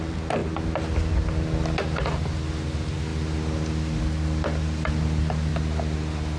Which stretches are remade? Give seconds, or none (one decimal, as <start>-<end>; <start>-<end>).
none